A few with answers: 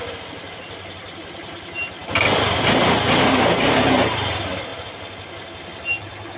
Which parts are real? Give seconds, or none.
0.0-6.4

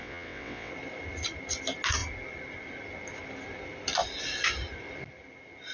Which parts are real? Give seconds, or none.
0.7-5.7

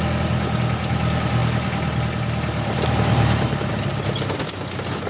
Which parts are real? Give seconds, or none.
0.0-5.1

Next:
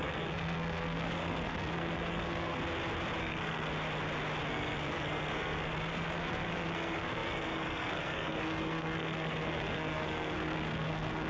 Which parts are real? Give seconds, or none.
2.6-3.2; 3.7-4.5

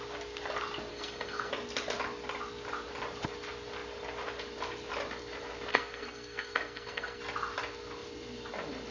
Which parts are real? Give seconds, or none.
0.0-0.9; 1.5-5.7; 7.2-8.9

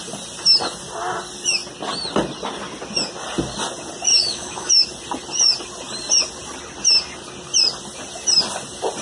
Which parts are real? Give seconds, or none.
0.0-4.1; 4.7-9.0

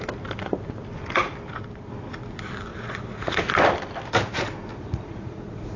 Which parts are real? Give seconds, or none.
0.0-2.7; 3.4-4.7

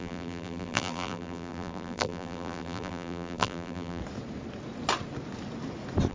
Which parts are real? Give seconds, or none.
4.0-6.1